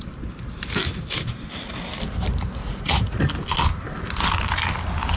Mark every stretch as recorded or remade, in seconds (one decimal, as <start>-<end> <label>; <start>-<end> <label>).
0.0-2.6 recorded; 2.6-3.2 remade; 3.2-5.2 recorded